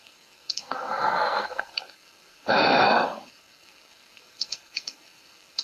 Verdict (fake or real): fake